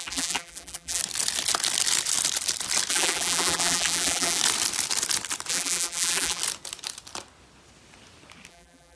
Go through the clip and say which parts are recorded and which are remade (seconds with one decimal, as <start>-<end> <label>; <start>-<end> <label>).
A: 0.0-1.0 remade; 1.0-2.9 recorded; 2.9-4.4 remade; 4.4-5.5 recorded; 5.5-6.4 remade; 6.4-8.5 recorded; 8.5-9.0 remade